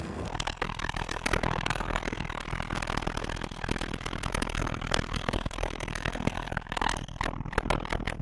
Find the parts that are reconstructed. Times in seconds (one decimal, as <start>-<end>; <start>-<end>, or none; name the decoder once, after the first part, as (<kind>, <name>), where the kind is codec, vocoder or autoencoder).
0.0-2.4 (codec, SNAC); 4.3-6.9